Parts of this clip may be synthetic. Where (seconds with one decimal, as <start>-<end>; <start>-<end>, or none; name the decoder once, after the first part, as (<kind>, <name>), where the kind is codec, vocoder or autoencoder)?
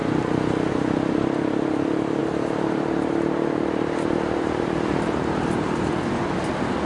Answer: 2.2-5.9 (vocoder, BigVGAN v2)